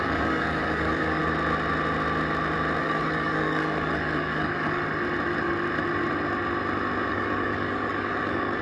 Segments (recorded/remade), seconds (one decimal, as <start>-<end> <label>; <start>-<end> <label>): 0.0-1.2 remade; 1.2-2.8 recorded; 2.8-4.8 remade; 4.8-7.1 recorded; 7.1-8.6 remade